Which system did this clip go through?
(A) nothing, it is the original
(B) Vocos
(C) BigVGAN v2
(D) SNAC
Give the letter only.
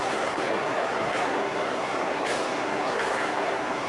D